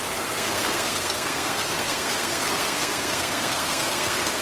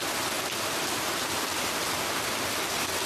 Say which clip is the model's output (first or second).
first